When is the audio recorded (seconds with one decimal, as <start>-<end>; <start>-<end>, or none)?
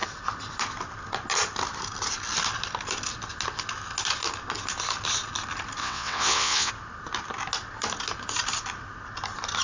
0.0-5.8; 6.7-9.6